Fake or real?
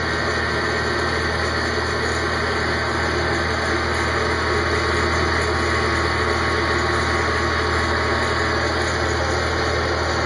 real